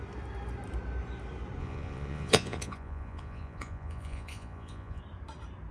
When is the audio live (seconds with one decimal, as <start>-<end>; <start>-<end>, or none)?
0.0-1.6; 5.0-5.7